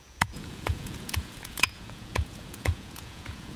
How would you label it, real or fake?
fake